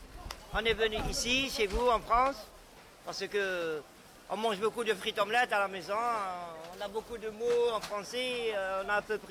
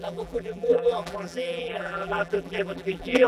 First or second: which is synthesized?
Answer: second